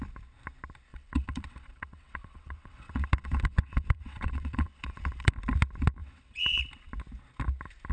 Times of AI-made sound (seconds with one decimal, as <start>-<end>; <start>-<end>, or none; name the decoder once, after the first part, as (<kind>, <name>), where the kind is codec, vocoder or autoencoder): 0.9-5.3 (vocoder, WaveNeXt); 6.0-6.6

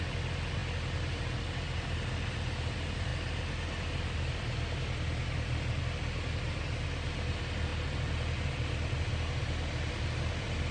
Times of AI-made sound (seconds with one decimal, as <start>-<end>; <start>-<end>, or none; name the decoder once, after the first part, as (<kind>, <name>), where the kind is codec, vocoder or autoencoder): none